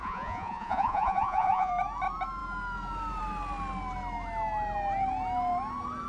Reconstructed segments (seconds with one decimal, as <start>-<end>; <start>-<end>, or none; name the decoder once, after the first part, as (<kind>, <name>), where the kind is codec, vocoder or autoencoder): 0.0-1.7 (vocoder, Vocos)